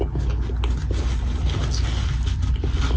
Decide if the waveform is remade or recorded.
recorded